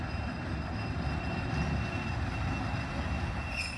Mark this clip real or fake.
real